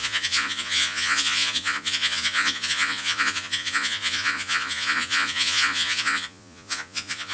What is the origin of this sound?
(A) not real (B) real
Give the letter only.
A